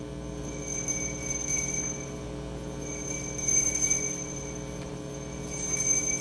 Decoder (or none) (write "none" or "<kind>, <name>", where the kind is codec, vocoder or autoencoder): none